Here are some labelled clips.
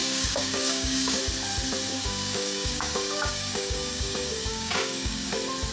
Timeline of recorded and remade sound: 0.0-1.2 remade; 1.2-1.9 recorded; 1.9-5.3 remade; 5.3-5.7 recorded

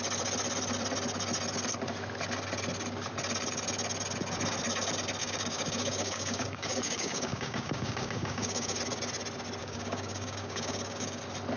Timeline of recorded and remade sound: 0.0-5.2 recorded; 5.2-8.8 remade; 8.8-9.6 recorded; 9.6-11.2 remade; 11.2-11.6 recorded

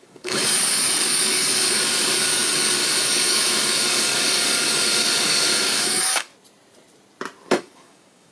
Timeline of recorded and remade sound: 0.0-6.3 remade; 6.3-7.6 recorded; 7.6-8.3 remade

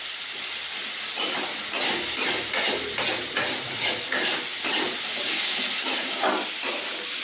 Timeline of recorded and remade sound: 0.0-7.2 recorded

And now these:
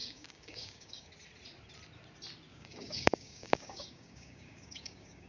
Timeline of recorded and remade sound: 0.0-1.1 remade; 1.1-2.5 recorded; 2.5-5.3 remade

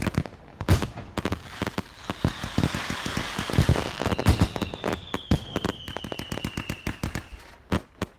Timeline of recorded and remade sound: 0.0-0.5 recorded; 0.5-4.0 remade; 4.0-4.5 recorded; 4.5-6.0 remade; 6.0-8.2 recorded